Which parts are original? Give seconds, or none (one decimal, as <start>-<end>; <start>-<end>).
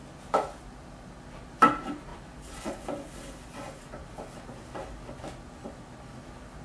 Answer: 0.0-6.6